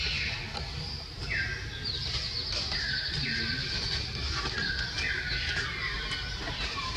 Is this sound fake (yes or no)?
no